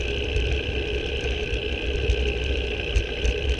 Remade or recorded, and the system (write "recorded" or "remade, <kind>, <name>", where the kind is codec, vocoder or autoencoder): recorded